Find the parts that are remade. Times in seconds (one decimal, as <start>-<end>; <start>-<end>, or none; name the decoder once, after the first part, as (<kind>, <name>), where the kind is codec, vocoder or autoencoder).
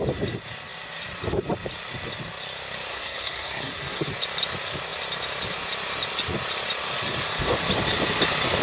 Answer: 2.9-4.1 (codec, SNAC)